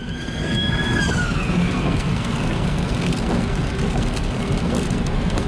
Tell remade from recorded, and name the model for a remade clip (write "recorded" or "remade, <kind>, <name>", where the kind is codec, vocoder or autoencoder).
remade, codec, SNAC